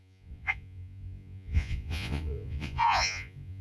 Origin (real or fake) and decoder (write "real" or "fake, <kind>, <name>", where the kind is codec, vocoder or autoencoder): fake, vocoder, Vocos